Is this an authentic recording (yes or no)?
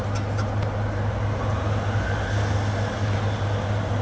yes